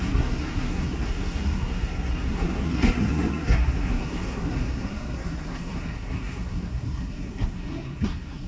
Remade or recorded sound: remade